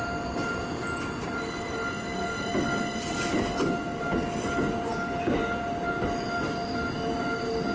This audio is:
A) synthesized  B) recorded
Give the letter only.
B